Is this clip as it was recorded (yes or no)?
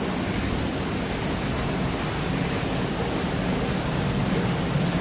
yes